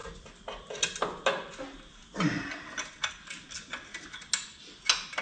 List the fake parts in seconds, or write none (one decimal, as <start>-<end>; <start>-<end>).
none